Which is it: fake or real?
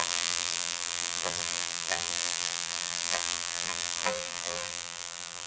fake